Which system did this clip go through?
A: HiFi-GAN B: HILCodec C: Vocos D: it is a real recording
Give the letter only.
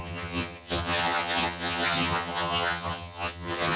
A